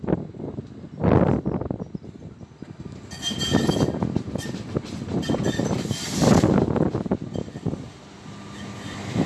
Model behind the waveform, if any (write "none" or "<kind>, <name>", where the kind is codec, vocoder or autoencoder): none